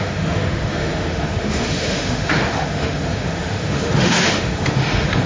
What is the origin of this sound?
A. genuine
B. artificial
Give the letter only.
B